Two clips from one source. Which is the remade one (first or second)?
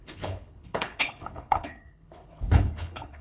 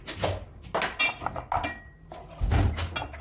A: first